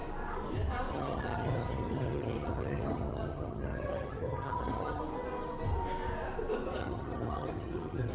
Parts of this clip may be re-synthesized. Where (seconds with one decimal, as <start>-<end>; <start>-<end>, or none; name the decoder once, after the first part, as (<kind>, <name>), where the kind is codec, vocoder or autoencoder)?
0.9-5.0 (vocoder, HiFi-GAN); 6.8-8.1